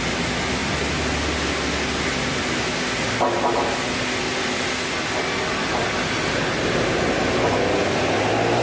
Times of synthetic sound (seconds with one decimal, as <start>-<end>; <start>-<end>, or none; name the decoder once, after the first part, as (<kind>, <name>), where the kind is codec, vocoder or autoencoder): none